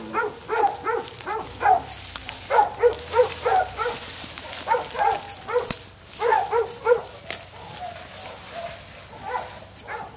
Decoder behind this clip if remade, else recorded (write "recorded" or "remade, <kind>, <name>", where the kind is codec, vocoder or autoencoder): recorded